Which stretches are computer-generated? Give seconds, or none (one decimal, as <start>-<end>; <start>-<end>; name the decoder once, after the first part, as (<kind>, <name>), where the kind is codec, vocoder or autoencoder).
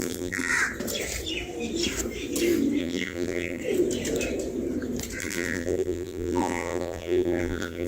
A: 0.0-0.5 (vocoder, BigVGAN v2); 2.8-3.6; 5.2-7.9